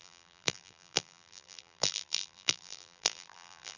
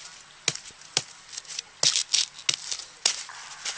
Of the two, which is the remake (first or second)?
first